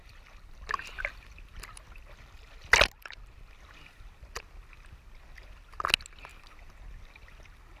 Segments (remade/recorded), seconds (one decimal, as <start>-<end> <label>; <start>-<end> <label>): 0.0-7.8 recorded